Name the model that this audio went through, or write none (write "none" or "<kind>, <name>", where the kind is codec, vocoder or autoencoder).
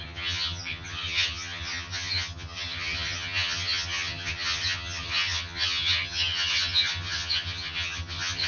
vocoder, HiFi-GAN